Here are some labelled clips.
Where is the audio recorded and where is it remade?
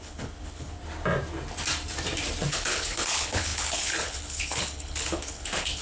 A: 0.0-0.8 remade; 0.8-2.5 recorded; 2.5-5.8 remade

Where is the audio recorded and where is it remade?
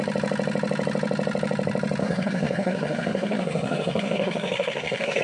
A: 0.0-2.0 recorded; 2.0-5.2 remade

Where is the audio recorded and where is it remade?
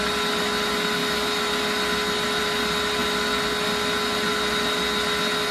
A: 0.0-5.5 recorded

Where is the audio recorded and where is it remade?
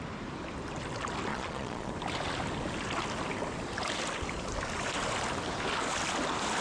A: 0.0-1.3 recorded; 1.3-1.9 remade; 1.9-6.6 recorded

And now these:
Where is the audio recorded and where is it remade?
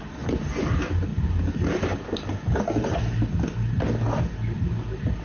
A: 0.0-5.2 recorded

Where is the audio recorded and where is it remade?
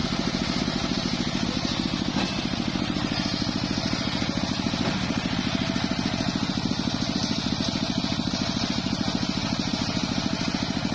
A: 0.0-10.9 recorded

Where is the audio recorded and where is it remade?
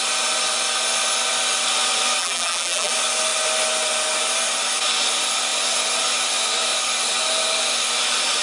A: 0.0-2.2 recorded; 2.2-2.9 remade; 2.9-8.4 recorded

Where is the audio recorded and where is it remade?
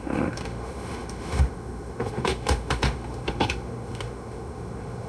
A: 0.0-5.1 remade